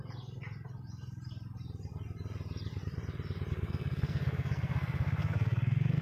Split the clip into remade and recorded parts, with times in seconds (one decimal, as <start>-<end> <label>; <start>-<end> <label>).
0.0-3.5 recorded; 3.5-6.0 remade